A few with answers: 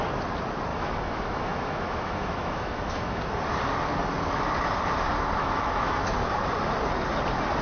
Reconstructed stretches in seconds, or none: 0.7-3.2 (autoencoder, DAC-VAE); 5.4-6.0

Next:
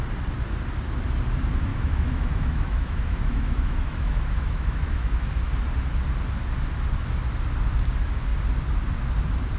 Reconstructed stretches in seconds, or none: 1.7-5.2 (autoencoder, DAC-VAE)

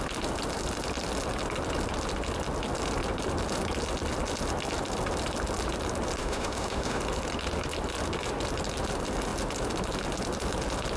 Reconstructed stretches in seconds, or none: 6.2-7.0 (autoencoder, DAC-VAE)

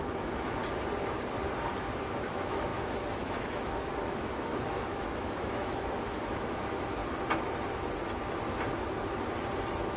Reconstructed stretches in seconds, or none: 0.0-0.6 (autoencoder, DAC-VAE); 2.3-7.0; 9.6-10.0

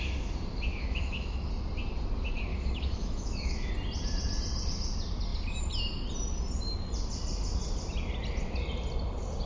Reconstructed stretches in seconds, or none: 0.7-1.5 (autoencoder, DAC-VAE); 2.5-3.7

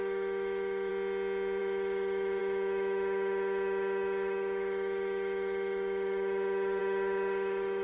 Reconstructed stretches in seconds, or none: 0.0-0.9 (autoencoder, DAC-VAE); 1.6-7.8